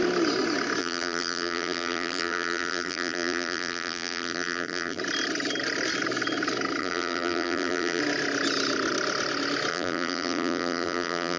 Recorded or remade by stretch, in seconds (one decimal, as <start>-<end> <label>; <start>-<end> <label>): 0.0-0.8 recorded; 0.8-5.0 remade; 5.0-6.8 recorded; 6.8-8.0 remade; 8.0-9.7 recorded; 9.7-11.4 remade